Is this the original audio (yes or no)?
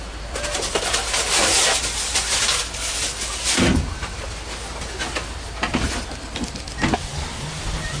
yes